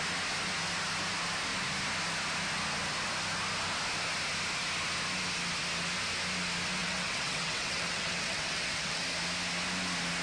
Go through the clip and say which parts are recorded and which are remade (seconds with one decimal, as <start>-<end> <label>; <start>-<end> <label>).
0.0-6.8 recorded; 6.8-9.0 remade; 9.0-10.2 recorded